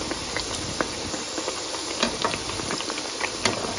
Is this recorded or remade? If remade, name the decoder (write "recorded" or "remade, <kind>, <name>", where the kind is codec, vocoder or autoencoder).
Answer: recorded